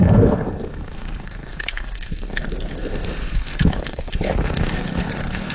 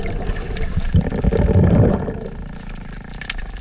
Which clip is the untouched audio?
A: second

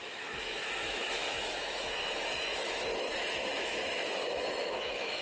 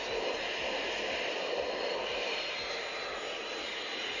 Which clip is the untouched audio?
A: second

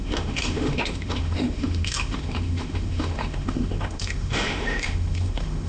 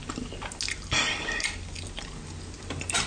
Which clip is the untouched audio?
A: second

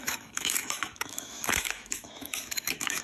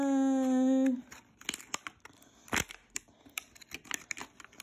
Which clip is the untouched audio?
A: second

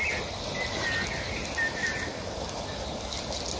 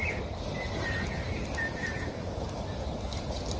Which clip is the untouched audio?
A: first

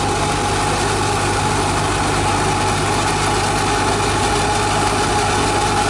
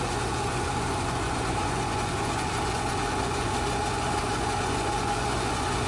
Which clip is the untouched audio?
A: first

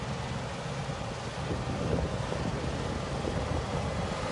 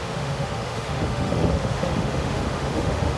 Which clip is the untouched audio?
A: first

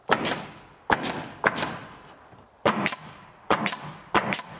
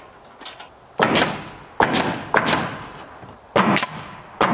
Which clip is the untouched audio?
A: second